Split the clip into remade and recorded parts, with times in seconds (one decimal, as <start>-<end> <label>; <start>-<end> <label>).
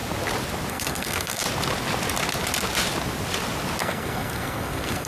0.0-0.7 recorded; 0.7-1.4 remade; 1.4-3.8 recorded; 3.8-5.1 remade